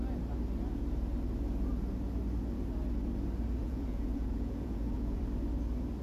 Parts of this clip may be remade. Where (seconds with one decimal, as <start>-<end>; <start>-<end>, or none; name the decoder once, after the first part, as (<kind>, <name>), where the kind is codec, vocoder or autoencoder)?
3.6-5.2 (vocoder, Vocos)